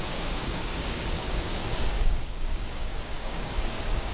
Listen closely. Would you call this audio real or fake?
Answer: fake